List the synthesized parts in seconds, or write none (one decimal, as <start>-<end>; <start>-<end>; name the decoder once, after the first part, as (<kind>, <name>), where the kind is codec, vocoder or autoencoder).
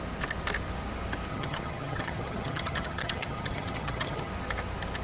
1.3-4.3 (vocoder, HiFi-GAN)